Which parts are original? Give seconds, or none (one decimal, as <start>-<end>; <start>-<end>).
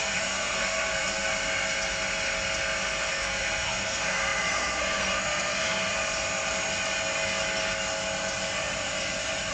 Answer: 1.3-3.1; 5.9-9.5